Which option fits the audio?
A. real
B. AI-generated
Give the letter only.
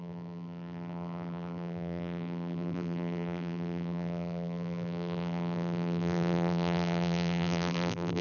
B